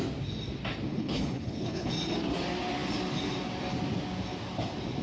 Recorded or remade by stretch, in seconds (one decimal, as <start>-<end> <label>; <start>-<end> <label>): 0.0-0.9 recorded; 0.9-1.9 remade; 1.9-5.0 recorded